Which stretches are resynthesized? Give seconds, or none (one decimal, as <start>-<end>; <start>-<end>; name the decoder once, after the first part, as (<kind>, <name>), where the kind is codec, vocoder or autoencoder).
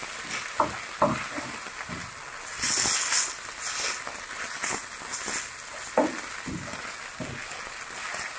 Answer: none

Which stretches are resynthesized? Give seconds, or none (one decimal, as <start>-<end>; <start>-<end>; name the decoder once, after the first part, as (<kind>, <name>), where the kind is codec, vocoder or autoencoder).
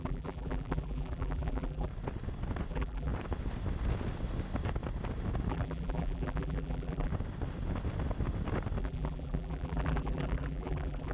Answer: 0.0-1.9 (vocoder, BigVGAN v2); 2.7-3.1; 5.5-7.1; 8.8-11.1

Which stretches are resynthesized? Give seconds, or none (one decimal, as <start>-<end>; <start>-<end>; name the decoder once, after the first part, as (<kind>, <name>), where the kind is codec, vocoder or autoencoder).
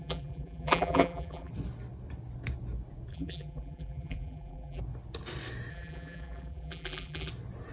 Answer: 0.0-1.5 (vocoder, BigVGAN v2); 3.1-4.8; 5.7-7.3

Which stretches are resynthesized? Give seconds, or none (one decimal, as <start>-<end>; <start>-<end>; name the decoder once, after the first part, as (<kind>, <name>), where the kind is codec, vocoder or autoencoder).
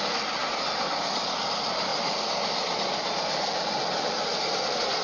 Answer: 0.4-0.9 (vocoder, BigVGAN v2)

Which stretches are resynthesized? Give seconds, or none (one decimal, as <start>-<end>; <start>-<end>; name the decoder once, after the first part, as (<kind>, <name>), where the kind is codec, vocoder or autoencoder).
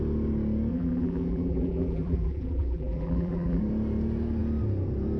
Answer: 0.7-3.6 (vocoder, BigVGAN v2)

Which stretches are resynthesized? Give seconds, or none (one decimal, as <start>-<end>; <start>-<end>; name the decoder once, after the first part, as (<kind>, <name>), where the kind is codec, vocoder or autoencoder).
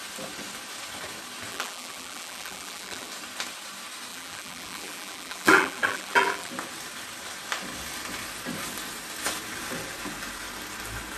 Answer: 1.5-3.1 (vocoder, BigVGAN v2); 4.1-6.5